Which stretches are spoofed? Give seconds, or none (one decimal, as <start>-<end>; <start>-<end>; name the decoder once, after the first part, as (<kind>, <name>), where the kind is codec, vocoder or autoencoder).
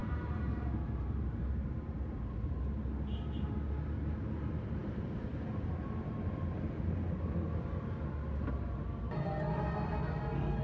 0.0-2.8 (vocoder, BigVGAN v2); 4.8-5.3